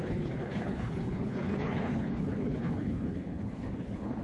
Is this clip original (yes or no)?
no